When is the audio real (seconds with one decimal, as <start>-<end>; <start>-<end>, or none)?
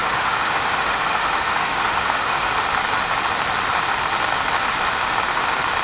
2.5-5.8